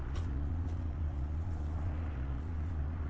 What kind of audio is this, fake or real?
fake